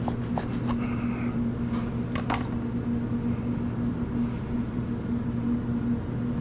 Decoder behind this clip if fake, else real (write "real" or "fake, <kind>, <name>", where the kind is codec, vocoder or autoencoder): real